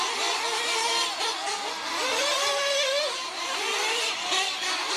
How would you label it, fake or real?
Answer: real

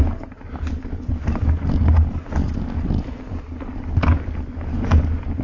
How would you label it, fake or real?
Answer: real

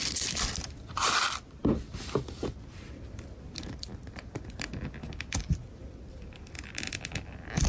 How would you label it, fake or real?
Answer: real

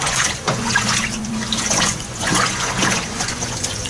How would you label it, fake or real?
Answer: fake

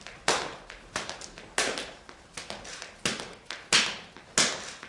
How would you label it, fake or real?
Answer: real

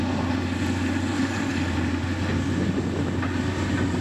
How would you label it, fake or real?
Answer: real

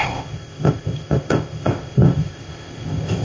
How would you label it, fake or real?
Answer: fake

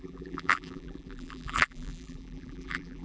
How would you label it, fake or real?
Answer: fake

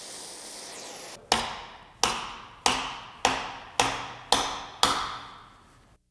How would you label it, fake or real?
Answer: real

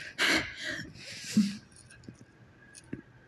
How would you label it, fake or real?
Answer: real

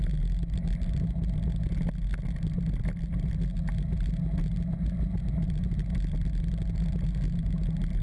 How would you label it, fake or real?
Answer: real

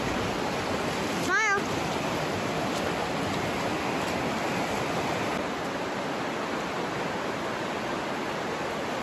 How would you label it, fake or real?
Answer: real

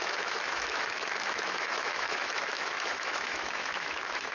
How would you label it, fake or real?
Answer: fake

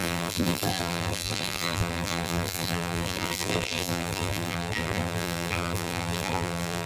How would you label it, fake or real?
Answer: fake